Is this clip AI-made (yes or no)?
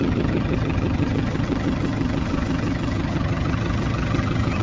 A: yes